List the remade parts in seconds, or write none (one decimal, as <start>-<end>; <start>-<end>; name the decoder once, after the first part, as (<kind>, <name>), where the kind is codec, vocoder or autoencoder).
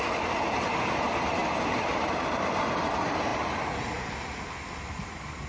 none